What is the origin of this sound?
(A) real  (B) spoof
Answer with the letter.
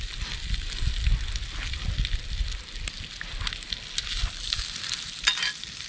A